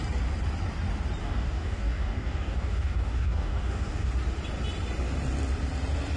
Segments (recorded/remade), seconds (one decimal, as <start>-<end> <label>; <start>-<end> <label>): 0.0-1.2 recorded; 1.2-4.1 remade; 4.1-6.2 recorded